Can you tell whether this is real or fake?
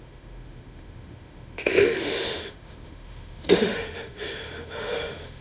fake